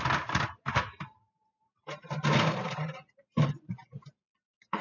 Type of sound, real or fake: fake